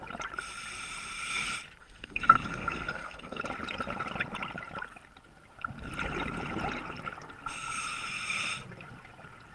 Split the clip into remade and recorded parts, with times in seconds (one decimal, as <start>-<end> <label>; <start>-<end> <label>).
0.0-1.8 recorded; 1.8-3.4 remade; 3.4-9.5 recorded